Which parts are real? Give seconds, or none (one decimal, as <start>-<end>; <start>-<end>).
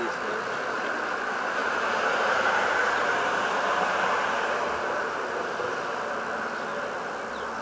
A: 0.0-1.6; 5.2-7.6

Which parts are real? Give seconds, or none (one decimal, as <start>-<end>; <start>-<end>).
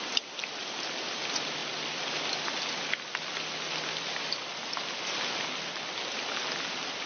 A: 0.0-7.1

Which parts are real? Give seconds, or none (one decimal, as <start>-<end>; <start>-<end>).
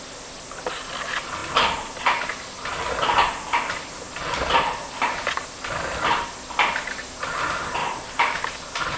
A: 0.0-7.8; 8.4-9.0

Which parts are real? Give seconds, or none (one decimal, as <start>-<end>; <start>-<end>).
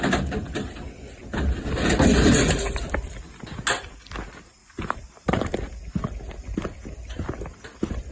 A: 0.0-4.6; 5.5-8.1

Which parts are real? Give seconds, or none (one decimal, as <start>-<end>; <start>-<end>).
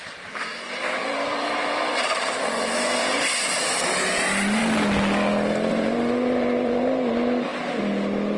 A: 4.6-5.7; 7.5-8.4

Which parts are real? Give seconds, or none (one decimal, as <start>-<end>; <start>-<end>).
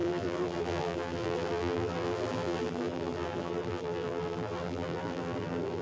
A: none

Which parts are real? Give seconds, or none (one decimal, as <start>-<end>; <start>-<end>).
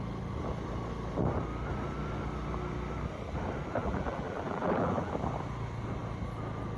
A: 0.0-3.8; 5.1-6.8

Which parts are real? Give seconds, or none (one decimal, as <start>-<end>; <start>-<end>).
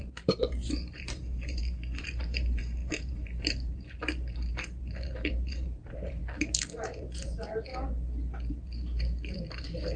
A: 6.2-7.0; 7.7-8.5